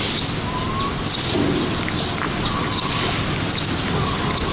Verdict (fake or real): real